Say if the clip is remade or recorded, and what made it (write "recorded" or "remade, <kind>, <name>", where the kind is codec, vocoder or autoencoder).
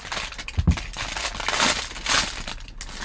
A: recorded